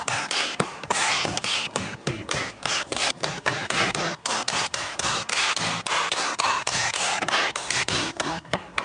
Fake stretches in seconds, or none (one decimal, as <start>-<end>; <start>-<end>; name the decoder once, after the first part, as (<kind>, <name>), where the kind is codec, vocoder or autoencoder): 0.0-5.5 (codec, SNAC); 6.1-8.8